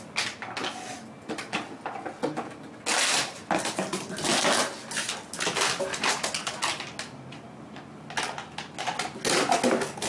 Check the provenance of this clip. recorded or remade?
recorded